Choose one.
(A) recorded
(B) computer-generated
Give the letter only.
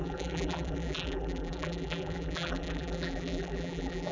B